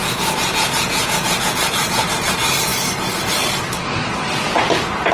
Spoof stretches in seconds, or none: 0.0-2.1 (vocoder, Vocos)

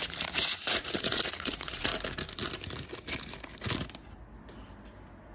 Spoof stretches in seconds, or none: 0.0-1.9 (vocoder, Vocos)